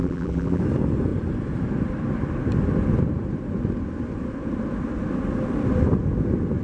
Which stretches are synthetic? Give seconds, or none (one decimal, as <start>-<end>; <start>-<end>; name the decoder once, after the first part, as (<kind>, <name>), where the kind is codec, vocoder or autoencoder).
0.0-0.6 (vocoder, BigVGAN v2)